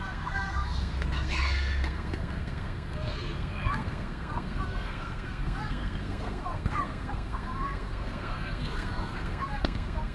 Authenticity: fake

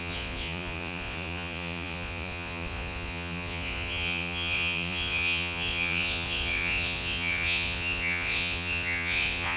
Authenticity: fake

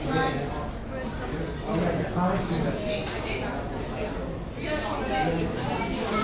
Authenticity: real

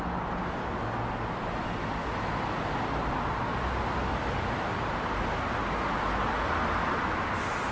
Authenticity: real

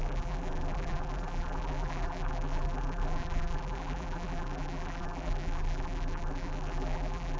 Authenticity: fake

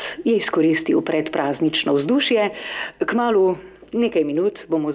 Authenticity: real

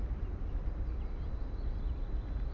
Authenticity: real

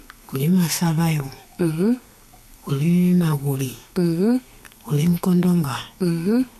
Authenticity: fake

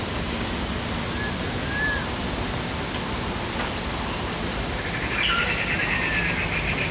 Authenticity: real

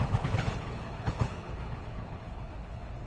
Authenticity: fake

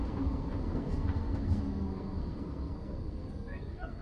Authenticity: fake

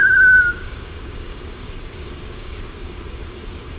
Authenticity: fake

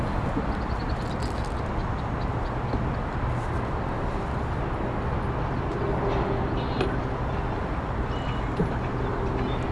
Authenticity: real